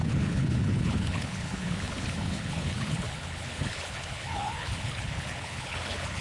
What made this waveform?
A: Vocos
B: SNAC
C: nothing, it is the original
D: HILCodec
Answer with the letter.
D